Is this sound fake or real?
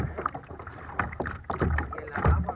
real